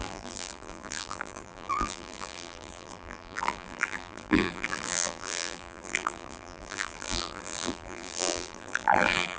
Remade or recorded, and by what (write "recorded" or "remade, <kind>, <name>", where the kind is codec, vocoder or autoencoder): remade, vocoder, BigVGAN v2